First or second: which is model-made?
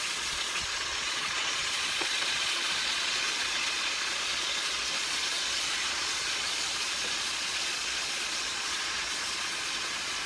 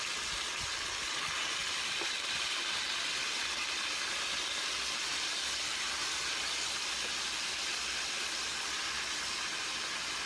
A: first